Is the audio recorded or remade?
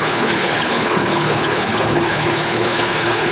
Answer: remade